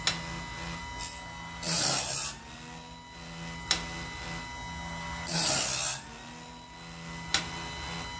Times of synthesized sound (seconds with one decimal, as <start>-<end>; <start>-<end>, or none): none